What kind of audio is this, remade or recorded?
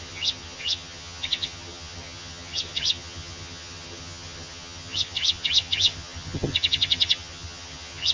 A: remade